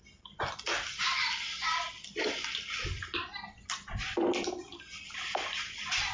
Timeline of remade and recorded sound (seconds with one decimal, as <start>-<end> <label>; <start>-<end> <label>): 0.0-6.1 recorded

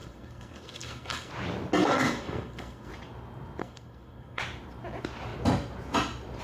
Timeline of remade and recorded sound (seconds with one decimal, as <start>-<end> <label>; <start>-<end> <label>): 0.0-1.3 remade; 1.3-1.8 recorded; 1.8-2.9 remade; 2.9-3.6 recorded; 3.6-4.4 remade; 4.4-6.4 recorded